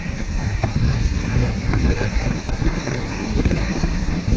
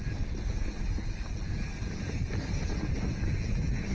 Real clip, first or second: second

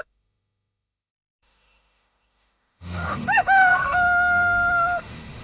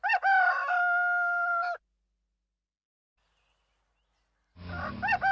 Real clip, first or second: second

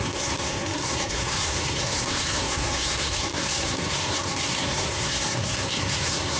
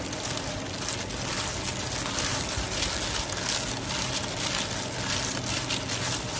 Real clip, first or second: second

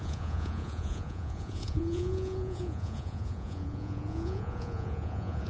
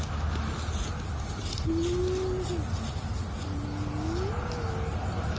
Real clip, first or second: second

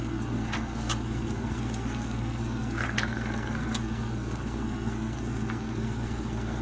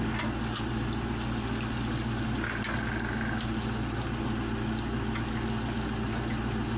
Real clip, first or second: second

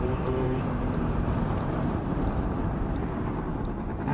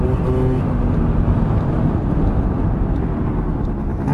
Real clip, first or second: second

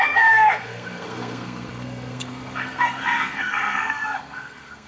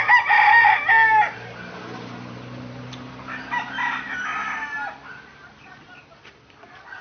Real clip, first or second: second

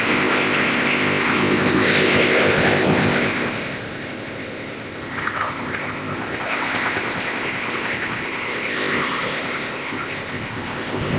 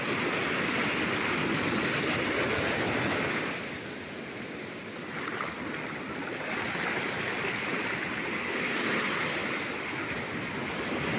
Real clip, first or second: second